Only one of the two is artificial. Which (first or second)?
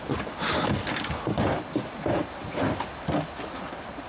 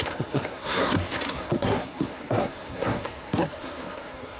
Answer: second